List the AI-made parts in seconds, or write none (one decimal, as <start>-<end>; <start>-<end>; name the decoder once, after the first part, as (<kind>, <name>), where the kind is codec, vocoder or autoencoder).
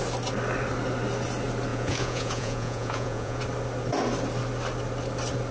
1.7-3.4 (vocoder, Vocos)